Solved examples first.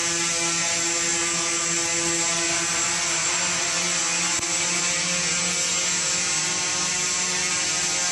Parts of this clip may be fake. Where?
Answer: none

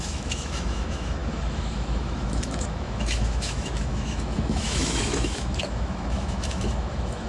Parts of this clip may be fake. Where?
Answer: 0.0-7.3 (autoencoder, DAC-VAE)

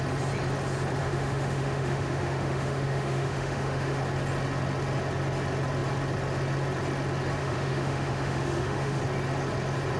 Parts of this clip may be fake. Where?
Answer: 1.0-4.0 (autoencoder, DAC-VAE); 7.4-9.0

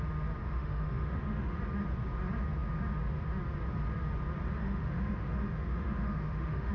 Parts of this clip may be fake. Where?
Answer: 0.4-1.6 (autoencoder, DAC-VAE); 4.6-6.7

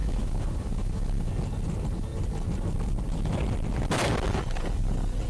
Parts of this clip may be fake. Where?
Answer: 0.0-1.3 (autoencoder, DAC-VAE)

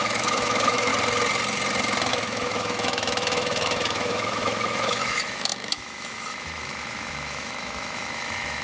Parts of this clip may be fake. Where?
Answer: 0.0-0.9 (autoencoder, DAC-VAE); 2.1-8.6

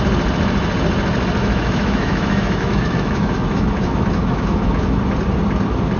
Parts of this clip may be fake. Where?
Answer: 1.4-5.0 (autoencoder, DAC-VAE)

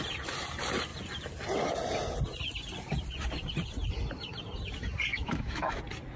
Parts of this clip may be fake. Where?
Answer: 5.1-5.8 (autoencoder, DAC-VAE)